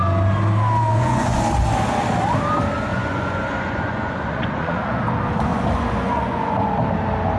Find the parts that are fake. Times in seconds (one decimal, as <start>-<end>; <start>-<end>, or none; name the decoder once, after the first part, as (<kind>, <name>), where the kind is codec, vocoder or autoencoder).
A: 0.9-1.4 (vocoder, Vocos); 2.9-5.0; 5.5-6.7